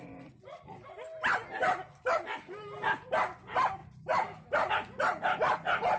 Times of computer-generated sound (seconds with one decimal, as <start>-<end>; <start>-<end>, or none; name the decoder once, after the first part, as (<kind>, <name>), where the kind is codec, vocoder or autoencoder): none

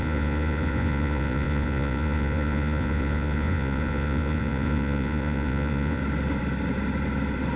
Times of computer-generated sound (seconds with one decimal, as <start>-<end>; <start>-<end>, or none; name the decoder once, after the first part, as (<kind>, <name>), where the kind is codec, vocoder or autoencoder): 0.0-6.0 (vocoder, Vocos)

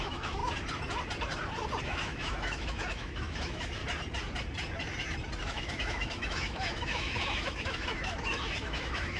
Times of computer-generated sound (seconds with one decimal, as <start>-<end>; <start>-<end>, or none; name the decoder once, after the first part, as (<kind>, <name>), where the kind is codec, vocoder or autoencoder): 0.0-0.4 (autoencoder, DAC-VAE); 1.8-3.8; 5.4-9.2

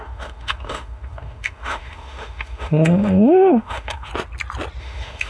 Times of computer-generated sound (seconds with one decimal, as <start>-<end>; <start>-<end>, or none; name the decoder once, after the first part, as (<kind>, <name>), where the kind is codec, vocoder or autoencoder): 0.0-4.1 (autoencoder, DAC-VAE); 4.8-5.3